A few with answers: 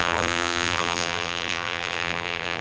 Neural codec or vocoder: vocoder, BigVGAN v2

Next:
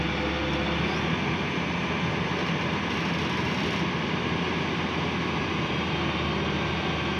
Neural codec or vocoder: none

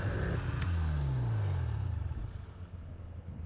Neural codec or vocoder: none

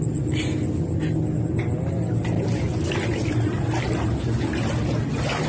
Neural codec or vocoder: none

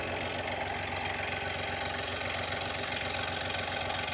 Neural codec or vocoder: none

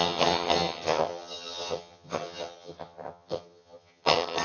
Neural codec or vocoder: vocoder, HiFi-GAN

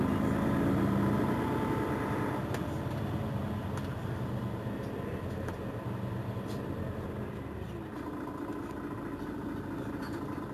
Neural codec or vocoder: none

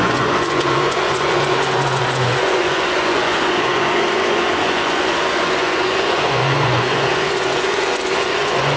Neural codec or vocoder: vocoder, Vocos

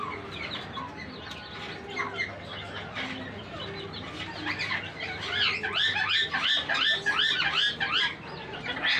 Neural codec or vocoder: none